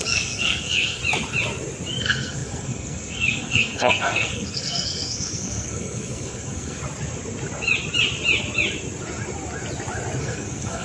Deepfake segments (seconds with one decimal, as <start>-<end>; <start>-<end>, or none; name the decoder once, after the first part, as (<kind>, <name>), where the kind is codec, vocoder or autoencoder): 0.0-1.0 (codec, SNAC); 2.0-6.8; 10.2-10.8